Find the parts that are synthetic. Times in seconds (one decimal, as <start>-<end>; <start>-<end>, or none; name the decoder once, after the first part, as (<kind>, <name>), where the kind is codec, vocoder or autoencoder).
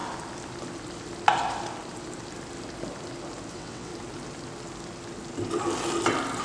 3.5-3.9 (vocoder, WaveNeXt)